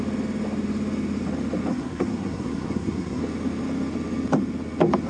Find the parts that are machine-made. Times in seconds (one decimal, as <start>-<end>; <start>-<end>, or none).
1.7-3.2